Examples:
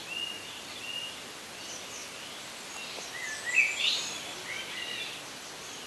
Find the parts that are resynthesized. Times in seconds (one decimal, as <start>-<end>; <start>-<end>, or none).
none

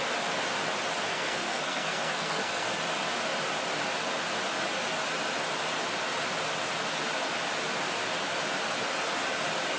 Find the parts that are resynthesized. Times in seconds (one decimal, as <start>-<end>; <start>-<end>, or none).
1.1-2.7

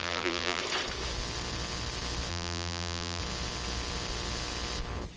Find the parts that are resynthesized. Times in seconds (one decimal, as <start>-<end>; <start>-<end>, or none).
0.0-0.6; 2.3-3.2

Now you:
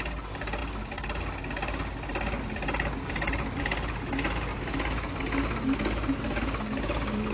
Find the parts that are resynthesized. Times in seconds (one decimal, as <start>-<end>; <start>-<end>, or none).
none

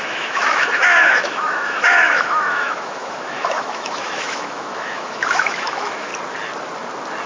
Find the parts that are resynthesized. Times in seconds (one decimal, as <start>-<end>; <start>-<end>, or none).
0.0-6.1

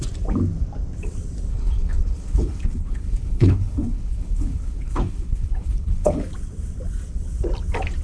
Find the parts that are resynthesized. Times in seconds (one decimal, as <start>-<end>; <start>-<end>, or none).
1.5-6.3

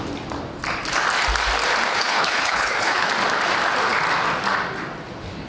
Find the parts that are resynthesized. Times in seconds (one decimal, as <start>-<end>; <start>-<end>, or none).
1.9-3.1

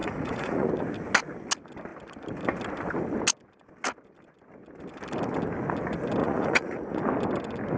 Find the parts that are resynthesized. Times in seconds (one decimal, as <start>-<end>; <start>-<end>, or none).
0.0-0.7; 6.2-7.0